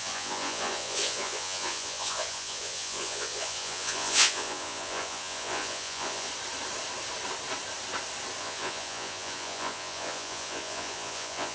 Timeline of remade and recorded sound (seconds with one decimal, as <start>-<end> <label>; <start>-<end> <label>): 0.0-6.3 remade; 6.3-8.4 recorded; 8.4-11.5 remade